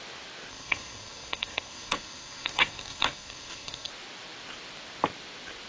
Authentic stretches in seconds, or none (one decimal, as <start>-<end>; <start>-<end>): 0.0-0.5; 3.9-5.7